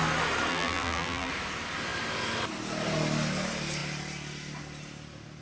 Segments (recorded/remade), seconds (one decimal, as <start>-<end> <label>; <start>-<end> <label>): 0.0-0.5 recorded; 0.5-1.3 remade; 1.3-5.4 recorded